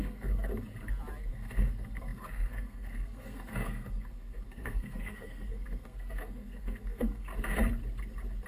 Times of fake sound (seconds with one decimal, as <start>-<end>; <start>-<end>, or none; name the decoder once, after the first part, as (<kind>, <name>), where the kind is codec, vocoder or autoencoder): 0.0-0.5 (codec, SNAC); 1.3-7.3